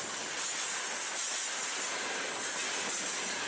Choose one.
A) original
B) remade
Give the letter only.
A